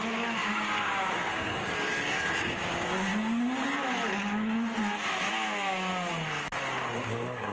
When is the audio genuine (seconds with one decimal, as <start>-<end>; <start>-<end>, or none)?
3.1-5.3; 5.9-6.9